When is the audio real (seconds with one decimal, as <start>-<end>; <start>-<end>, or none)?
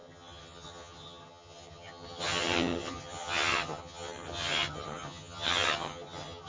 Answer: none